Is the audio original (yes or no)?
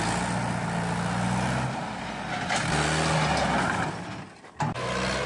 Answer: yes